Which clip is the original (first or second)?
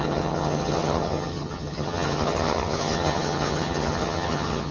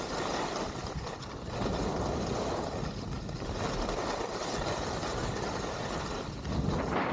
second